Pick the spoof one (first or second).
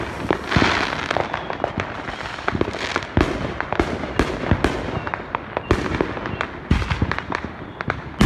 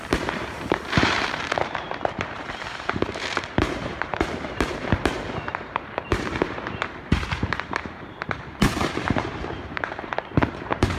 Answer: second